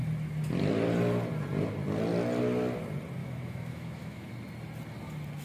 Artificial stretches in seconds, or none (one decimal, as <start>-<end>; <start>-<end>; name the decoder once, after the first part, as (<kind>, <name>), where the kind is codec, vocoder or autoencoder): 3.2-4.3 (autoencoder, DAC-VAE)